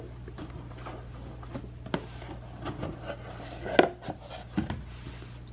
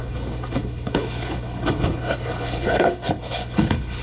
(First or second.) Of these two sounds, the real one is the first